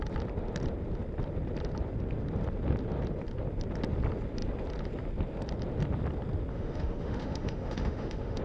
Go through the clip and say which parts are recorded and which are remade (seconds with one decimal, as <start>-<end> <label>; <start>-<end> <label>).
0.0-6.5 recorded; 6.5-8.4 remade